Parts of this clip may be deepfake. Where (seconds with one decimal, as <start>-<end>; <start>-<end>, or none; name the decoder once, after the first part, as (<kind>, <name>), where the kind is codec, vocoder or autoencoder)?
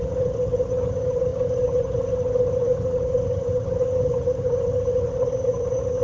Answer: 0.0-6.0 (vocoder, HiFi-GAN)